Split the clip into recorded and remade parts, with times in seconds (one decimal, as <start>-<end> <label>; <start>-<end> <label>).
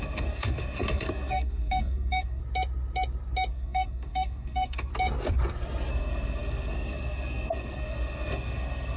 0.0-2.4 remade; 2.4-3.5 recorded; 3.5-4.9 remade; 4.9-5.9 recorded; 5.9-9.0 remade